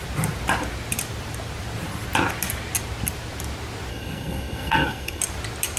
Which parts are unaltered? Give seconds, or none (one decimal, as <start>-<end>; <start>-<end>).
0.0-3.9; 5.2-5.8